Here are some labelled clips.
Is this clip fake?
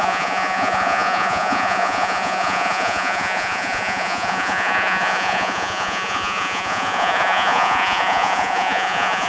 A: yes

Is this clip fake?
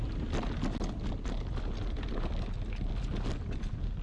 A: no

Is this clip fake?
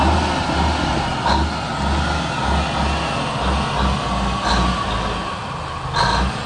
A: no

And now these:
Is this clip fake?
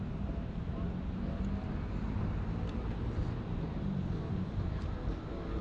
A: no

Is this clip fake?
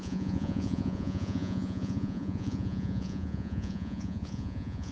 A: yes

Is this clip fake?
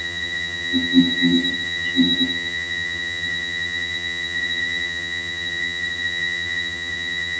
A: yes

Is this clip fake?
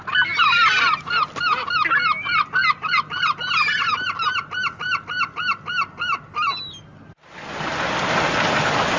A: no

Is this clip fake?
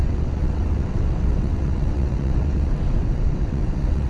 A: yes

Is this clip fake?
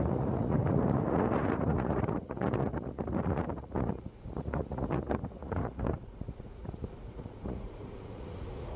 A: yes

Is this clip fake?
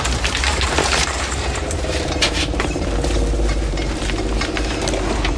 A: yes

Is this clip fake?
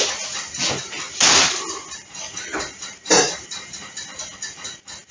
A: no